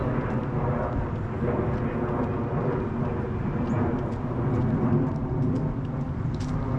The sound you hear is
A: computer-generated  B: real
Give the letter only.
B